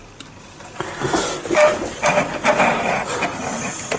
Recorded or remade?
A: recorded